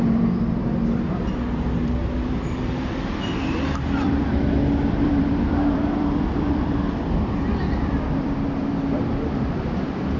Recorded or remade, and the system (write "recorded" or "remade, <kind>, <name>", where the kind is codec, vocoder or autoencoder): remade, vocoder, BigVGAN v2